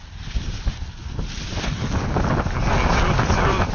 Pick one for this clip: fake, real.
real